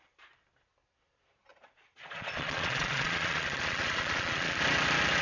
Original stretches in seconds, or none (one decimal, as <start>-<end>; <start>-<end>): 0.0-1.5; 4.6-5.2